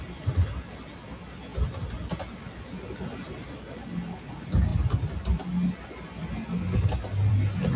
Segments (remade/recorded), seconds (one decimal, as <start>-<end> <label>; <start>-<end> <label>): 0.0-7.8 recorded